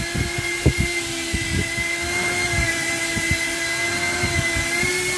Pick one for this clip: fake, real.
real